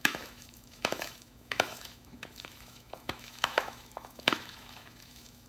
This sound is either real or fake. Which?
fake